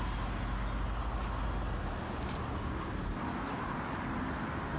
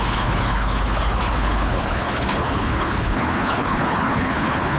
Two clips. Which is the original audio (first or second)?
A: first